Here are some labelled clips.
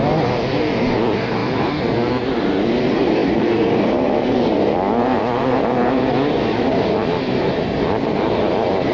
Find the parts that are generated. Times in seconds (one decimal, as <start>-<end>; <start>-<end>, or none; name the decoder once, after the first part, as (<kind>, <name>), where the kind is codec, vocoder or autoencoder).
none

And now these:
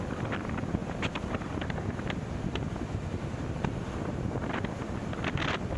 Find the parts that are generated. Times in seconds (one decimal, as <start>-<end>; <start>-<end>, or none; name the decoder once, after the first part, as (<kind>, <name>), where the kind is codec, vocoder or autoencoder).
0.8-4.3 (vocoder, BigVGAN v2)

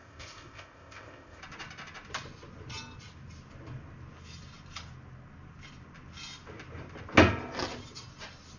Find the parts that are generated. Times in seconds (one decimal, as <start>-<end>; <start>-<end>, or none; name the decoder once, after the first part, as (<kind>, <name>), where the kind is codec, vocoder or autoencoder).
0.0-1.4 (codec, ZipCodec)

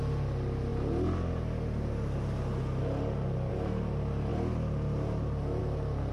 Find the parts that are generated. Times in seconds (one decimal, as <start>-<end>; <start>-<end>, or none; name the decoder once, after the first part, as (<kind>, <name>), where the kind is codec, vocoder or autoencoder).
none